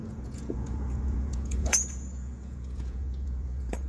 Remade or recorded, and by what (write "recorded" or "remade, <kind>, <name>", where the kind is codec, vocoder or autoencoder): remade, vocoder, Vocos